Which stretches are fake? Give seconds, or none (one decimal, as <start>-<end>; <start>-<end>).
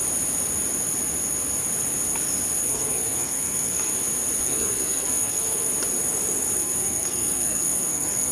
2.6-3.9; 4.4-5.7; 6.6-8.3